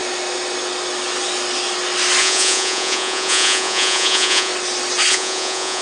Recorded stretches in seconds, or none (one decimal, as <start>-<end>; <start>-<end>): 0.0-2.2; 4.5-5.1